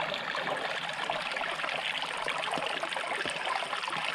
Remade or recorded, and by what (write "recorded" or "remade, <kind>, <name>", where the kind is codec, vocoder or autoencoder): recorded